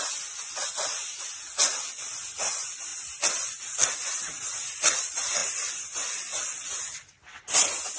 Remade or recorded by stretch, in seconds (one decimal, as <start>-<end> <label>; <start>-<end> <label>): 0.0-8.0 recorded